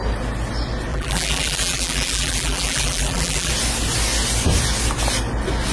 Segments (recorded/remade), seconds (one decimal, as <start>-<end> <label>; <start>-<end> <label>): 0.0-0.9 recorded; 0.9-3.5 remade; 3.5-5.7 recorded